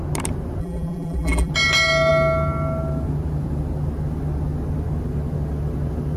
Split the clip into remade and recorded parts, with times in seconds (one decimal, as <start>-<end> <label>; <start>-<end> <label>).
0.0-0.6 recorded; 0.6-1.5 remade; 1.5-6.2 recorded